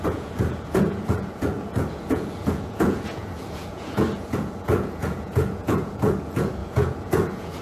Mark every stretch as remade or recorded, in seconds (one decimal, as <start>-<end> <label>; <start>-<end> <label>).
0.0-7.6 remade